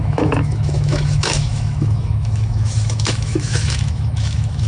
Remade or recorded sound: remade